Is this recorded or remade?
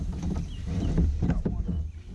remade